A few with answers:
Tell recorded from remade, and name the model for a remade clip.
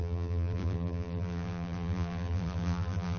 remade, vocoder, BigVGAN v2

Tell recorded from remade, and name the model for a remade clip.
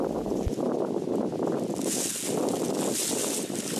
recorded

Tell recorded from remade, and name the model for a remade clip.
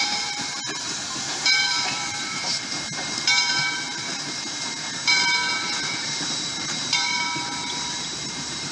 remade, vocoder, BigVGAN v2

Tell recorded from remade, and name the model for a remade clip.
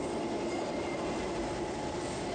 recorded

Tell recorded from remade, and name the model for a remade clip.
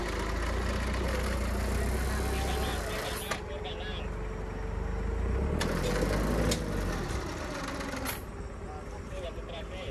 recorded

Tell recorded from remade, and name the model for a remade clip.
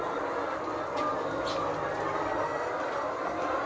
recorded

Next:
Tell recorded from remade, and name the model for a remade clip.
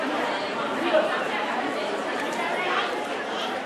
remade, vocoder, BigVGAN v2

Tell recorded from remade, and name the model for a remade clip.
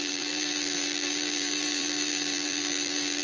remade, vocoder, BigVGAN v2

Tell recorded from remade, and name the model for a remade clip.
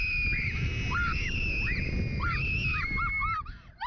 recorded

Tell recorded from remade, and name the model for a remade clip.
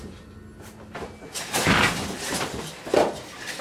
recorded